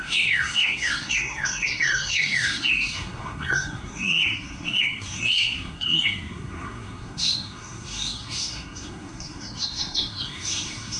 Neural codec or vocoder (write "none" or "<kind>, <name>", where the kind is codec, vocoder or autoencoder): codec, SNAC